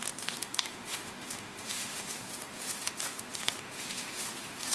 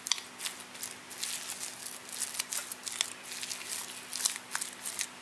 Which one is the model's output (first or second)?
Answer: first